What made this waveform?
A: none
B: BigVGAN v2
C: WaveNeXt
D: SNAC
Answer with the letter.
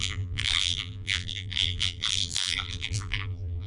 B